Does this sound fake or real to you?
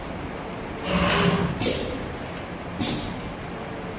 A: real